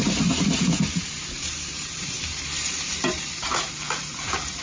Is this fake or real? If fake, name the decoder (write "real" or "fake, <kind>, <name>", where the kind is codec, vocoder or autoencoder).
fake, vocoder, BigVGAN v2